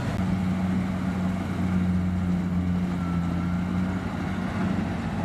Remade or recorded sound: recorded